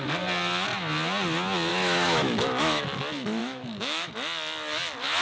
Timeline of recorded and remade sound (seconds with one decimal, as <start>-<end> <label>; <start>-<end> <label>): 0.0-1.7 recorded; 1.7-2.8 remade; 2.8-3.4 recorded; 3.4-4.1 remade; 4.1-5.2 recorded